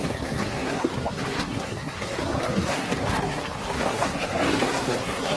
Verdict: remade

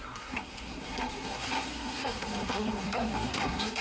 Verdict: remade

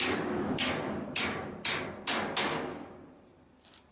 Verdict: recorded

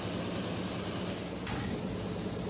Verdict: recorded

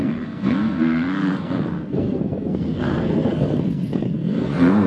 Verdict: remade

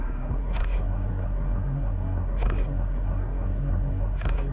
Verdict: remade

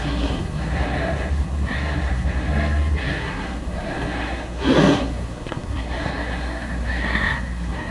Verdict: remade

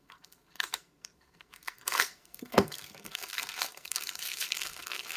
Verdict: remade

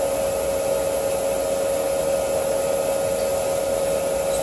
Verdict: recorded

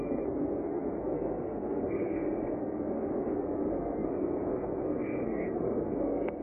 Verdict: remade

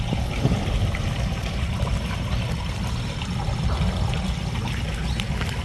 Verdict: recorded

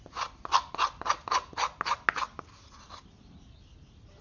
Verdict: recorded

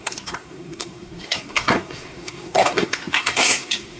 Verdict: remade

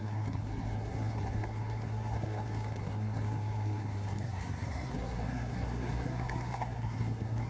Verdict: remade